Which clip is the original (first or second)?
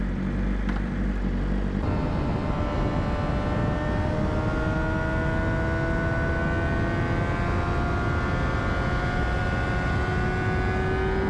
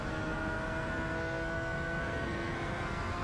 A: first